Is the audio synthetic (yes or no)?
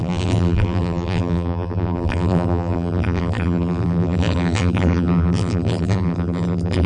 yes